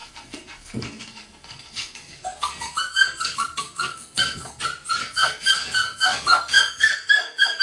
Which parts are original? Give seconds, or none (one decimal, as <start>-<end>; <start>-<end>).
4.6-5.0